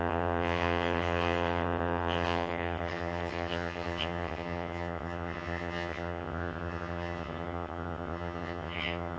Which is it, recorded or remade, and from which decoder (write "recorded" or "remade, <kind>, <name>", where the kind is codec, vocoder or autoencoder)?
remade, vocoder, HiFi-GAN